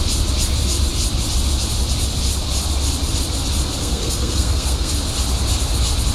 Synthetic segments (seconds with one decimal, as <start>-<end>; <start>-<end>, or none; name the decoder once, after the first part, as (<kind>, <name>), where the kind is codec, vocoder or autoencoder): 3.8-4.9 (codec, SNAC)